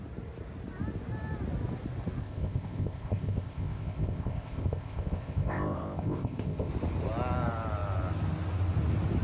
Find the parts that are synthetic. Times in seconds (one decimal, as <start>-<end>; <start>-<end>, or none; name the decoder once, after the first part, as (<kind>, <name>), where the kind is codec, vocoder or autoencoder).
2.2-6.7 (codec, ZipCodec)